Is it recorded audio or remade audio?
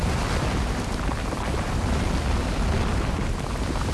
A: recorded